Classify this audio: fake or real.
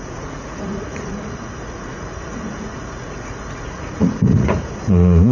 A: fake